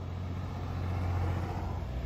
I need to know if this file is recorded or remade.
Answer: recorded